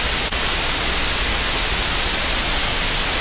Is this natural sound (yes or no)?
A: yes